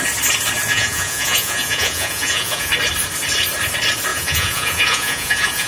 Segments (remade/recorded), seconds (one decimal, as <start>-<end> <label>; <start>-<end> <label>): 0.0-0.7 recorded; 0.7-2.7 remade; 2.7-4.1 recorded; 4.1-5.7 remade